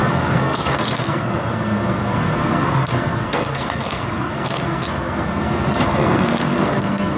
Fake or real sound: fake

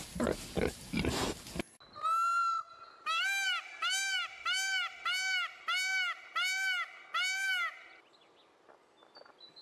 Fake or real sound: real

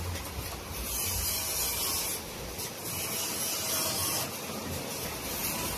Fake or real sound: real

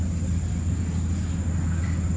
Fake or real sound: real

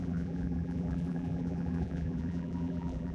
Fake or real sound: fake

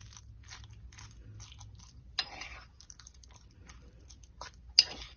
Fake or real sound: real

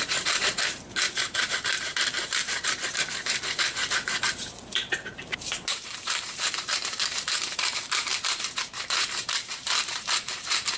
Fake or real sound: fake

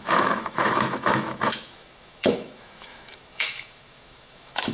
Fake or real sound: fake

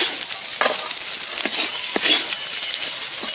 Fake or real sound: real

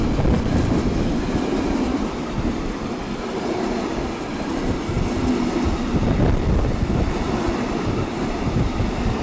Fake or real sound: real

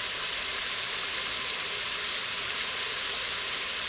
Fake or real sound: fake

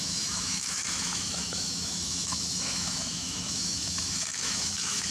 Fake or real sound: fake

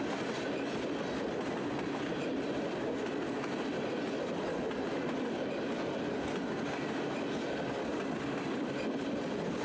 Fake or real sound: real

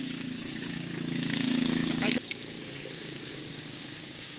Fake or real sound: fake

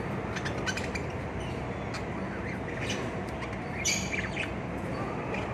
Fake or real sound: real